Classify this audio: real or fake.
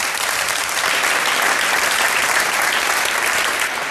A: real